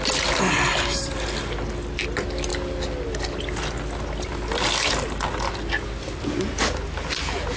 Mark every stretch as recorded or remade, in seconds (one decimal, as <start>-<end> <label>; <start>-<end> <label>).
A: 0.0-7.6 recorded